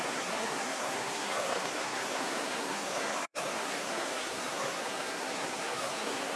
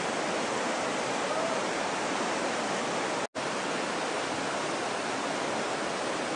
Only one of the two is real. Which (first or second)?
second